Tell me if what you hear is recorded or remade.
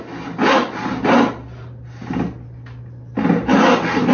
recorded